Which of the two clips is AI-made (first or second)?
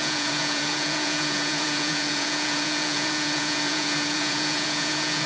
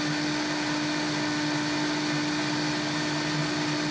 first